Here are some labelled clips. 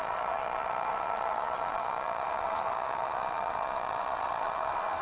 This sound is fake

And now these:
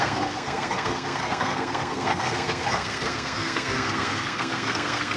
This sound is fake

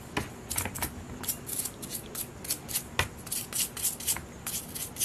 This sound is real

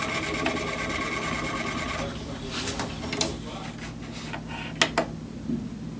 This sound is real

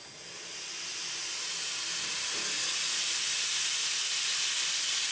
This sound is real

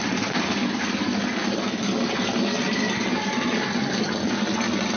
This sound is real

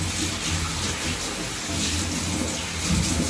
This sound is real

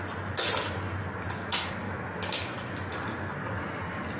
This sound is real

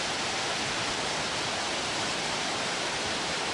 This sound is real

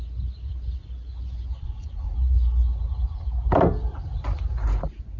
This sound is real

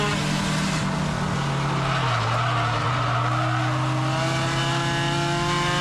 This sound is real